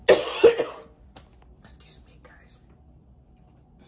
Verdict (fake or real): real